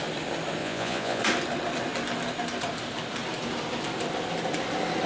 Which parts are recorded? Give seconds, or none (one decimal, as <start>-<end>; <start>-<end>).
0.0-0.6; 1.2-5.1